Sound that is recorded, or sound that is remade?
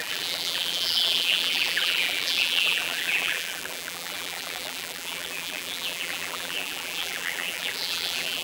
remade